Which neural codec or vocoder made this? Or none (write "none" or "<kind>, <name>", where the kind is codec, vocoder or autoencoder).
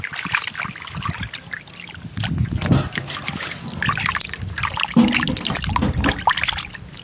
none